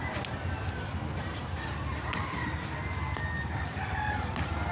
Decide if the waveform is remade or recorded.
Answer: recorded